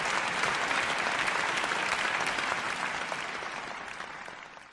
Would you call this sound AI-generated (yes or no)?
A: no